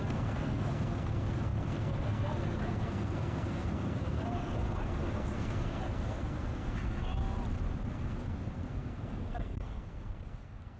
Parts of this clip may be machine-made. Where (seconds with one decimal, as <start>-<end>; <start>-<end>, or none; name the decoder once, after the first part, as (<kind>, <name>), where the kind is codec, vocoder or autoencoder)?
0.0-7.1 (codec, SNAC); 7.9-10.8